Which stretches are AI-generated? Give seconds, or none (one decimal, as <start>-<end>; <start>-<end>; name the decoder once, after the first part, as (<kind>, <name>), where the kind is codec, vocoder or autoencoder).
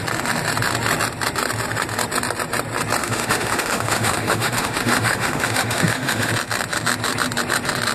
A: 3.0-6.3 (autoencoder, DAC-VAE)